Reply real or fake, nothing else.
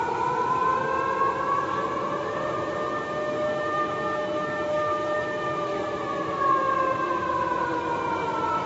fake